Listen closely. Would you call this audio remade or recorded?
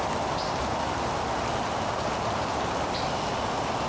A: recorded